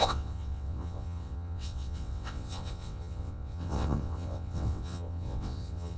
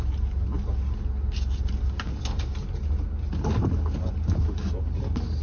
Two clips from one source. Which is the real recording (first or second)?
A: second